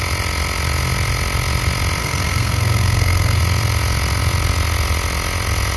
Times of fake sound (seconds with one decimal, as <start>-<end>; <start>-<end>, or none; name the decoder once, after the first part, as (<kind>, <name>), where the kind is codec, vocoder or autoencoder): 2.0-3.4 (codec, SNAC)